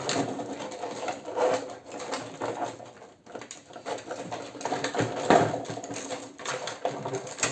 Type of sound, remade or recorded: recorded